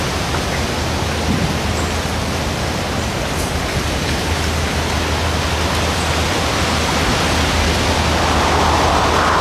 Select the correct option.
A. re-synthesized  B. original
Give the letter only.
B